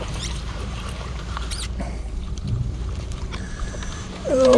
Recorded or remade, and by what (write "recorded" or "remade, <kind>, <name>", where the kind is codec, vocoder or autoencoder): remade, vocoder, BigVGAN v2